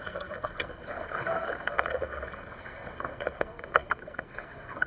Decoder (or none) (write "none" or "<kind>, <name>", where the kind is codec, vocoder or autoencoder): codec, SNAC